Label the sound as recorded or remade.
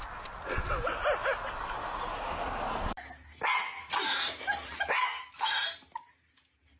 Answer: recorded